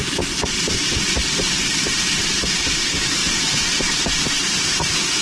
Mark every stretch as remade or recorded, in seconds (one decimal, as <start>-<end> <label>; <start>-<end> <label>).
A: 0.0-5.2 recorded